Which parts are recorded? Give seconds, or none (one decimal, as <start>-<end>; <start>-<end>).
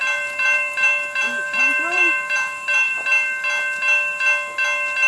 3.1-5.1